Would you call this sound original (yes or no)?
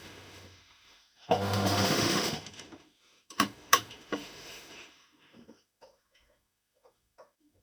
no